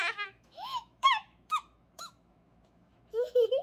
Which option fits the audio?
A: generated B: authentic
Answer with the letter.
A